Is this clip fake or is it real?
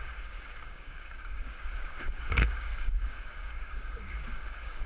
fake